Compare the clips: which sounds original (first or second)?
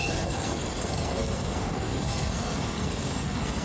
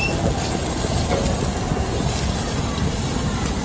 second